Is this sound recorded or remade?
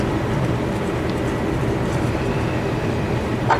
remade